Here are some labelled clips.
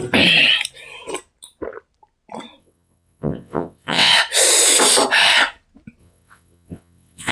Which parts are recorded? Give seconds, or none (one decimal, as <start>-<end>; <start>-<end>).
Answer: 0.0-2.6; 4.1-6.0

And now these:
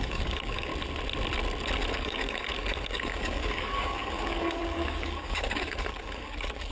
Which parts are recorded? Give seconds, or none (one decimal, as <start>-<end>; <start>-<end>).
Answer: 0.7-1.9

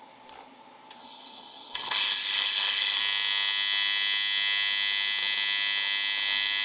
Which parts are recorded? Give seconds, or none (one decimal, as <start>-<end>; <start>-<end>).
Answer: 0.0-1.0; 3.0-6.6

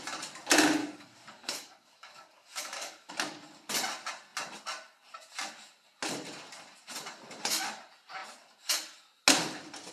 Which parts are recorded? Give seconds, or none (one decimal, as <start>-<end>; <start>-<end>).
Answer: 0.0-0.8; 3.1-9.9

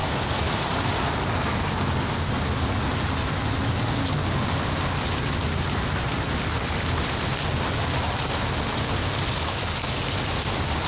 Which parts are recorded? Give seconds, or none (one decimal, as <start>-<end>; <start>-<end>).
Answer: 0.0-10.9

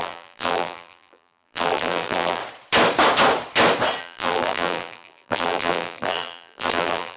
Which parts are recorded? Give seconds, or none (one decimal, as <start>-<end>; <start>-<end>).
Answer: 2.4-4.0